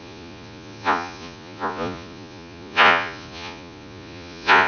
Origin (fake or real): fake